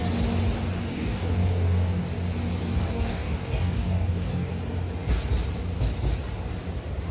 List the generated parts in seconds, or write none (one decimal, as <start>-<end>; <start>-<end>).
0.8-2.0; 2.6-4.5